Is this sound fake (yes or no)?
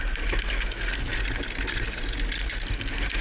no